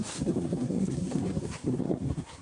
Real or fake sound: fake